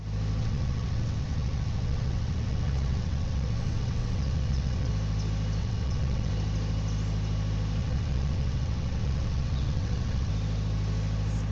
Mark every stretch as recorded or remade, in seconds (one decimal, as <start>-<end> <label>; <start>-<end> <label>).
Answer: 0.0-0.4 recorded; 0.4-4.9 remade; 4.9-5.6 recorded; 5.6-6.3 remade; 6.3-7.8 recorded; 7.8-10.3 remade; 10.3-11.5 recorded